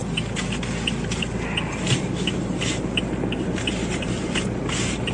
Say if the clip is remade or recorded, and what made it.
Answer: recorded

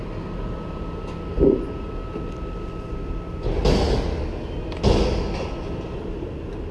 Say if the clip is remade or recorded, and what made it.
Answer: recorded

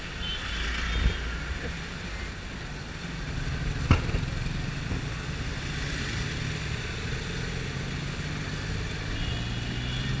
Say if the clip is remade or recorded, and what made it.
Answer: recorded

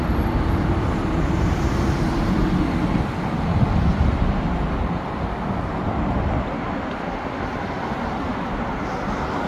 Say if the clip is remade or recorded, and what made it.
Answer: recorded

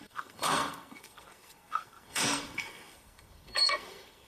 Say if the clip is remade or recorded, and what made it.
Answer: remade, codec, SNAC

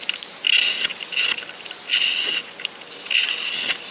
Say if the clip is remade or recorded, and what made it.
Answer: recorded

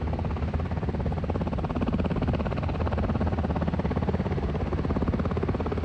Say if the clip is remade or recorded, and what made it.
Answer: recorded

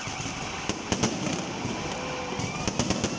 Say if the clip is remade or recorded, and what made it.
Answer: recorded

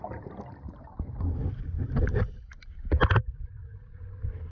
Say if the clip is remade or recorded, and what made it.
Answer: recorded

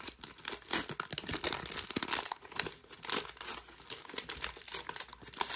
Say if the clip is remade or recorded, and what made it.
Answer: recorded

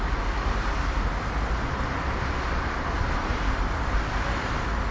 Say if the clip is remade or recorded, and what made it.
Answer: recorded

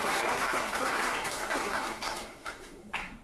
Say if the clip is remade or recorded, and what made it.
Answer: remade, codec, SNAC